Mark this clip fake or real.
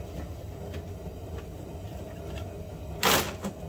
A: real